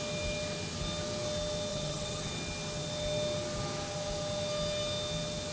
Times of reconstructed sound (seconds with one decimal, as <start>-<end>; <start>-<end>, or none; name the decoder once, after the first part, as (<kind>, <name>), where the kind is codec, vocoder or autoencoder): 1.7-2.3 (vocoder, HiFi-GAN)